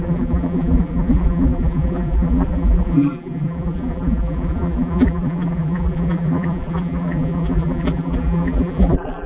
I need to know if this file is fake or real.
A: fake